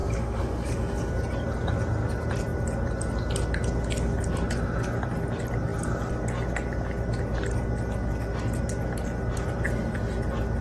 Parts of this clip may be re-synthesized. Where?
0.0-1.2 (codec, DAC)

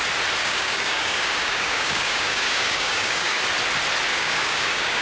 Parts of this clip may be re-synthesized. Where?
0.4-3.4 (codec, DAC); 4.1-5.0

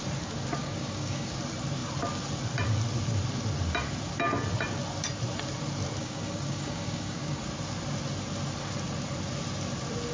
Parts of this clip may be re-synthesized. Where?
0.6-1.3 (codec, DAC); 6.0-7.4

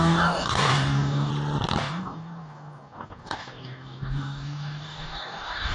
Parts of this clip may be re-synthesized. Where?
0.0-1.3 (codec, DAC); 1.8-5.7

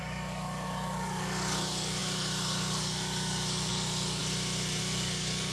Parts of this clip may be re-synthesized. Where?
0.0-4.2 (codec, DAC); 4.8-5.5